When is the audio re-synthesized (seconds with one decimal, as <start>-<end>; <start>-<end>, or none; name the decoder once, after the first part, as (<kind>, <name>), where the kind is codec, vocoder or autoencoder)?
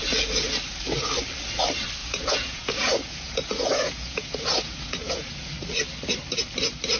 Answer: 2.0-5.5 (vocoder, Vocos)